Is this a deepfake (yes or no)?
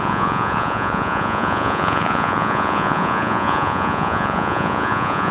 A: yes